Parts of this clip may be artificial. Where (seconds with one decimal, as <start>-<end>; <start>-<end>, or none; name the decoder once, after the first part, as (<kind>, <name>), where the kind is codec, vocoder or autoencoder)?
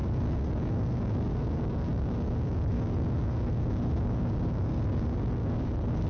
0.0-6.1 (codec, DAC)